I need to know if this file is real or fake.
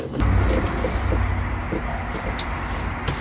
real